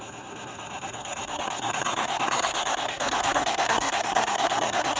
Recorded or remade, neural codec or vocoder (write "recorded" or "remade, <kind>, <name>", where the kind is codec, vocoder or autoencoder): remade, codec, SNAC